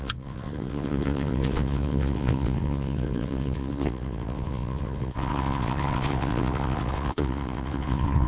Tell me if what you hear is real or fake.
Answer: fake